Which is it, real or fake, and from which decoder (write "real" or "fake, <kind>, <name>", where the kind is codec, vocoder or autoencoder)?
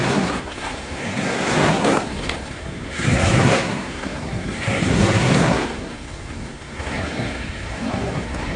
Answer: fake, codec, SNAC